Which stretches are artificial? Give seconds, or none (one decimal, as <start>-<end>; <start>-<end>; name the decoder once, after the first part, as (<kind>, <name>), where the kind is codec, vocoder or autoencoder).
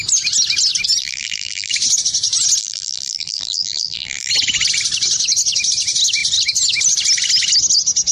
1.0-1.7 (vocoder, BigVGAN v2); 2.6-4.3